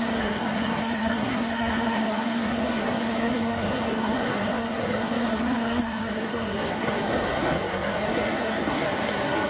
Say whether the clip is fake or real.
fake